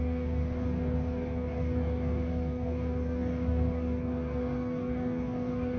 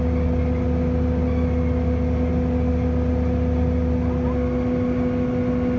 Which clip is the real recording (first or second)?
second